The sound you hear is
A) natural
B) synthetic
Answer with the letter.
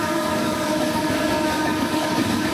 B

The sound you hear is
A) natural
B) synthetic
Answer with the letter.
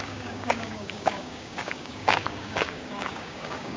B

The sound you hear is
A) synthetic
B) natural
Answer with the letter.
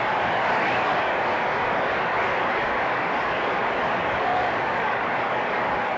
A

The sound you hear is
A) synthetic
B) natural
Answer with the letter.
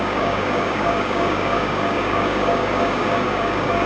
A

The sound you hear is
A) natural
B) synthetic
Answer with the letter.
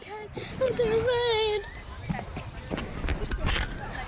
A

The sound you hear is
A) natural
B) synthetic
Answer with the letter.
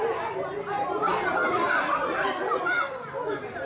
A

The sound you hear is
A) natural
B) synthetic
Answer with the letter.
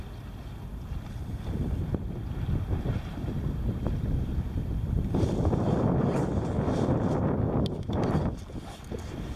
A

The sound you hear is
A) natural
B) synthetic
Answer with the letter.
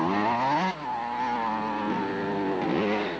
A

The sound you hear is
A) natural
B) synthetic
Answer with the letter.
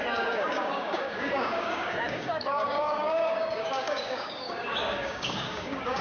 B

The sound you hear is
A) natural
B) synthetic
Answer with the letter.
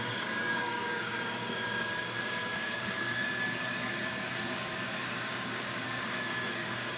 B